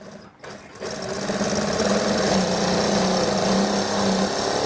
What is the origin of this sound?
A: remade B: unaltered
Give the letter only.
B